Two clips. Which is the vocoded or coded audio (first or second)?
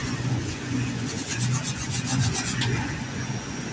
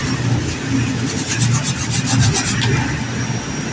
first